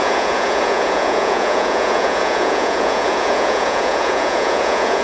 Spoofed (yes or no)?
yes